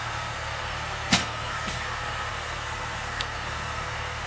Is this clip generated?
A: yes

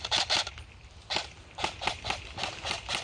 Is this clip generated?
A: no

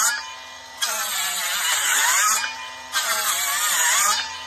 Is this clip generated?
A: no